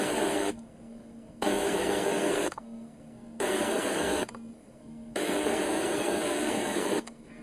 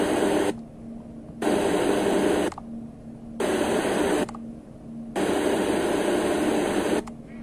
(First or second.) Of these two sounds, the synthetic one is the first